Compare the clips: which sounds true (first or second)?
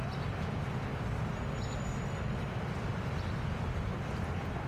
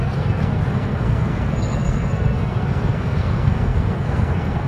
first